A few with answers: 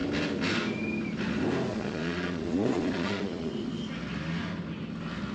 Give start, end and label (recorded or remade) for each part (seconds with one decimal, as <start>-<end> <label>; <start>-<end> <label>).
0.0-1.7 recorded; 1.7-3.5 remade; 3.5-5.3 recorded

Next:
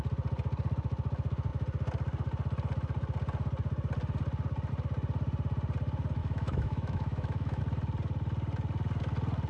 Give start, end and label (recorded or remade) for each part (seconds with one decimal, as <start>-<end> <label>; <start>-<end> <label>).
0.0-6.2 recorded; 6.2-7.6 remade; 7.6-9.5 recorded

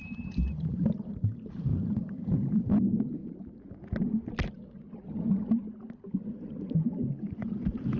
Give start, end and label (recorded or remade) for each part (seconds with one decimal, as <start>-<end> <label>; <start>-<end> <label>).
0.0-3.2 remade; 3.2-6.9 recorded; 6.9-8.0 remade

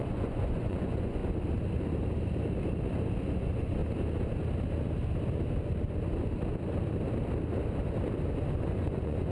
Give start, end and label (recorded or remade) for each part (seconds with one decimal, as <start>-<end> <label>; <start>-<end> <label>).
0.0-1.2 remade; 1.2-3.3 recorded; 3.3-3.8 remade; 3.8-8.6 recorded; 8.6-9.3 remade

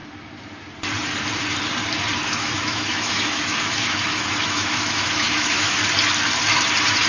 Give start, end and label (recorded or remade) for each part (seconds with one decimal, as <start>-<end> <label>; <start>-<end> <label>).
0.0-2.4 recorded; 2.4-5.8 remade; 5.8-7.1 recorded

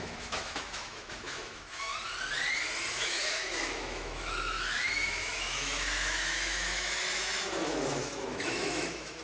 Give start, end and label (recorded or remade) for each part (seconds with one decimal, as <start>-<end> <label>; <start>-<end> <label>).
0.0-1.9 remade; 1.9-2.9 recorded; 2.9-9.2 remade

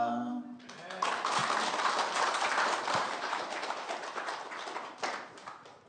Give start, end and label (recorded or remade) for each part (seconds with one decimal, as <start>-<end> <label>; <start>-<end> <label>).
0.0-5.9 remade

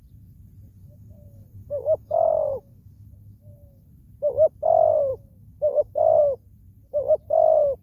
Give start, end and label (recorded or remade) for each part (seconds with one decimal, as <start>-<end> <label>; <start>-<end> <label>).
0.0-0.8 recorded; 0.8-4.0 remade; 4.0-5.1 recorded; 5.1-6.0 remade; 6.0-7.8 recorded